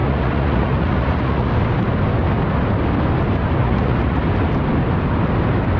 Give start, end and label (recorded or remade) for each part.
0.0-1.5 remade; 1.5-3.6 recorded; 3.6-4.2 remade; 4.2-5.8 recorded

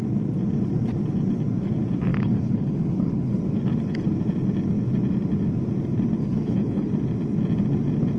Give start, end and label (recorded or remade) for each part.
0.0-2.1 recorded; 2.1-3.4 remade; 3.4-6.2 recorded; 6.2-6.9 remade; 6.9-8.2 recorded

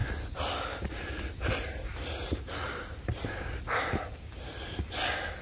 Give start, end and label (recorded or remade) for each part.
0.0-5.4 recorded

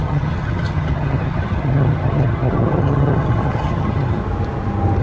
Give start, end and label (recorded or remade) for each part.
0.0-4.2 remade; 4.2-5.0 recorded

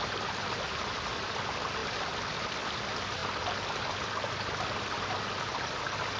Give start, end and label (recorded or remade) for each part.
0.0-6.2 recorded

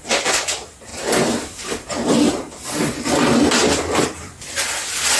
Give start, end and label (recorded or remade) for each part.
0.0-5.2 recorded

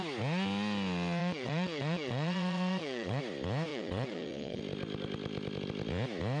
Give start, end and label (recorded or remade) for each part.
0.0-1.2 recorded; 1.2-3.2 remade; 3.2-3.7 recorded; 3.7-4.6 remade; 4.6-6.4 recorded